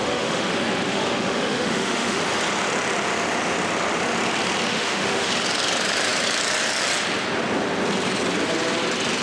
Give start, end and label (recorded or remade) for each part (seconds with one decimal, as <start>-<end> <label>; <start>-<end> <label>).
0.0-0.5 remade; 0.5-0.9 recorded; 0.9-2.2 remade; 2.2-4.7 recorded; 4.7-5.3 remade; 5.3-9.2 recorded

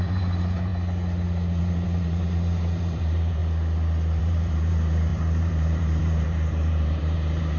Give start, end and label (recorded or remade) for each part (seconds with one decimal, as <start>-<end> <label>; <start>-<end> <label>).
0.0-0.7 remade; 0.7-1.6 recorded; 1.6-3.4 remade; 3.4-4.2 recorded; 4.2-7.6 remade

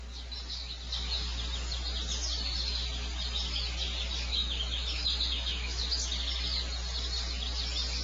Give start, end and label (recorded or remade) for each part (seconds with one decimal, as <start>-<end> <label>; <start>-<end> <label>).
0.0-4.3 recorded; 4.3-5.8 remade; 5.8-8.0 recorded